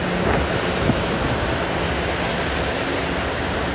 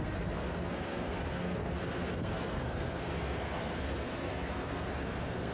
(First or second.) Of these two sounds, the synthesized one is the second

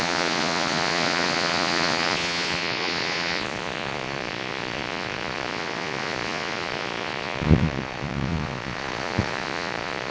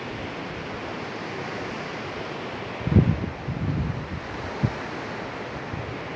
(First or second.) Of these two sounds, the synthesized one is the first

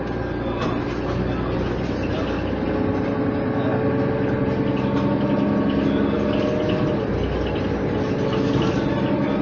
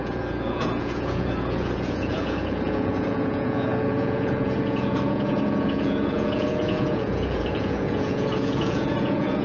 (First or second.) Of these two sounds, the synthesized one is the second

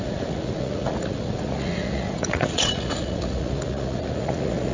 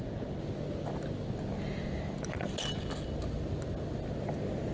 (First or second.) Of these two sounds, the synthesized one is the first